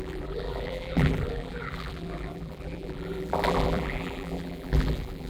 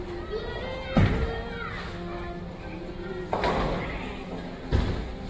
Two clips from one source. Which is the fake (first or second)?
first